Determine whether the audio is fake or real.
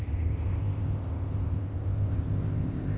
fake